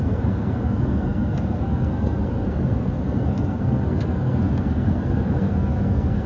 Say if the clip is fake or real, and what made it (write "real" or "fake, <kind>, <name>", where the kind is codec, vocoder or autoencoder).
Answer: fake, codec, SNAC